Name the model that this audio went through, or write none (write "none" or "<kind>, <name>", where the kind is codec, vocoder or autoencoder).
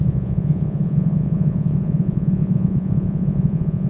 vocoder, Vocos